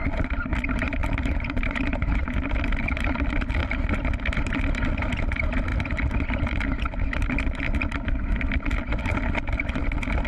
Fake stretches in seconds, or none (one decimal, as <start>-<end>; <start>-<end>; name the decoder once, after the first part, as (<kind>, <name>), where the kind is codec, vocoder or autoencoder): 1.0-2.4 (vocoder, BigVGAN v2)